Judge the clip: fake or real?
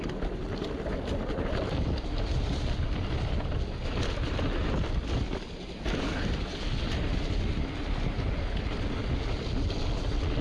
real